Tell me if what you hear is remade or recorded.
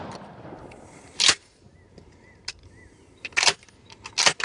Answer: recorded